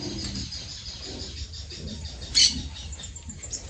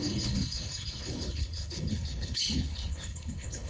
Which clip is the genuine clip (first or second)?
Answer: first